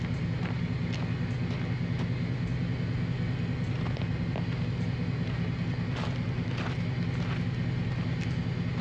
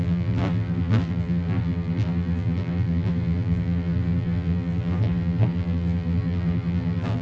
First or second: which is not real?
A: second